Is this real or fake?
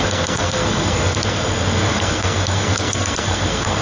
fake